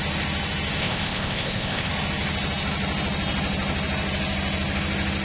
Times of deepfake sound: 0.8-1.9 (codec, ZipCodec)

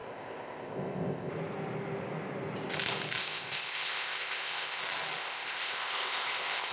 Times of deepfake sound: 0.0-1.3 (codec, ZipCodec); 3.2-4.8; 5.2-6.7